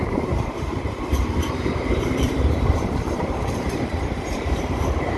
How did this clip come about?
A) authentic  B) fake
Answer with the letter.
B